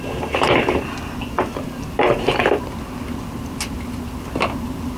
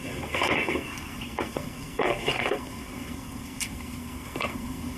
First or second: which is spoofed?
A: second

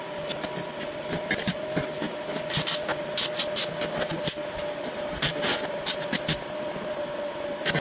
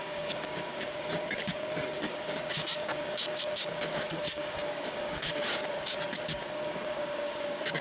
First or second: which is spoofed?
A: second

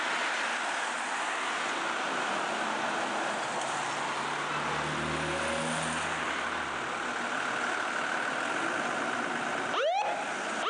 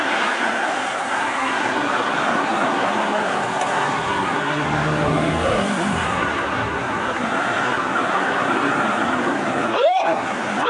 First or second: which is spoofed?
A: second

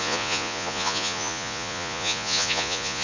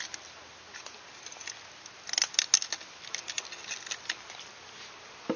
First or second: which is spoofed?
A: first